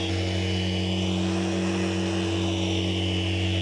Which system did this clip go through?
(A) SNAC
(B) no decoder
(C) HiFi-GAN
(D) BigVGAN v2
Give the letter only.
B